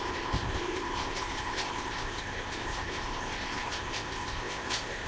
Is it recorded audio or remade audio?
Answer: remade